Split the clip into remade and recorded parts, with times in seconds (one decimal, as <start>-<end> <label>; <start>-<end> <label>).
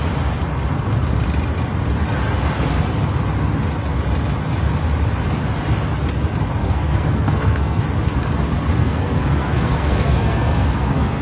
0.0-6.6 recorded; 6.6-7.8 remade; 7.8-8.8 recorded; 8.8-11.2 remade